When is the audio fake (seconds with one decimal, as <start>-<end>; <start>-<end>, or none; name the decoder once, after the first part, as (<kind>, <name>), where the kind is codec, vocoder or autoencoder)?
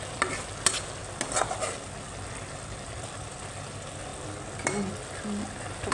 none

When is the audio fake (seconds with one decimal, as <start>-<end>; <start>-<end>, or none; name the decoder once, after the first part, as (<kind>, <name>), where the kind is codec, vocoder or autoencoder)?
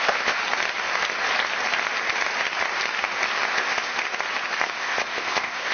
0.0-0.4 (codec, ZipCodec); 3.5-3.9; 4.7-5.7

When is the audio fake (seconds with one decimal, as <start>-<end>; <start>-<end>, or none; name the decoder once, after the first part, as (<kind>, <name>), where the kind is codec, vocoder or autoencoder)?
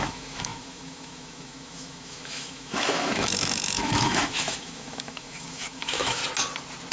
0.0-6.2 (autoencoder, DAC-VAE)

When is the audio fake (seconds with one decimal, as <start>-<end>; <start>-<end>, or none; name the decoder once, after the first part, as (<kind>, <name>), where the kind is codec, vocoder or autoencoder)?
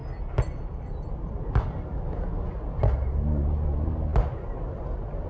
none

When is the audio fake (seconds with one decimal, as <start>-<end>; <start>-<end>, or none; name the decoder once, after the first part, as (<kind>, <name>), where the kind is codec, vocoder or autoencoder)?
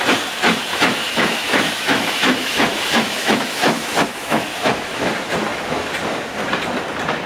0.7-5.1 (autoencoder, DAC-VAE)